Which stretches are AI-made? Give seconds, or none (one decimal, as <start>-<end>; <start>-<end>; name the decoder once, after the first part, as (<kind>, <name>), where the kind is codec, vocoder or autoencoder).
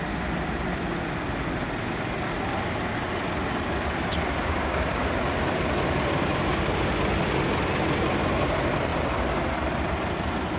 4.4-5.0 (codec, DAC)